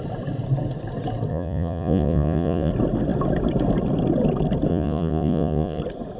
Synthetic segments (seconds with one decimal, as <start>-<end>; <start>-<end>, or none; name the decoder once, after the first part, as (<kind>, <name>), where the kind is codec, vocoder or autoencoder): 1.3-2.7 (vocoder, Vocos); 4.7-5.8